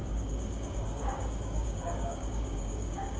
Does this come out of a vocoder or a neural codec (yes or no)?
yes